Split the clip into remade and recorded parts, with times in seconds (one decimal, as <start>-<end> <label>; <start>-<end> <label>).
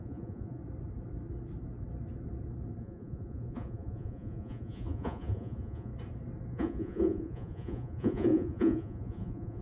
0.0-0.6 remade; 0.6-2.8 recorded; 2.8-5.9 remade; 5.9-6.5 recorded; 6.5-9.6 remade